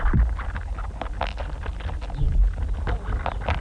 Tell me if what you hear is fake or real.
real